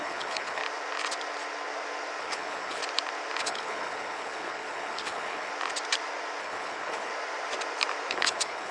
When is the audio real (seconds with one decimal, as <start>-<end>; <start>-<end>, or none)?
0.6-2.2; 2.8-3.4; 5.5-6.4; 7.1-8.1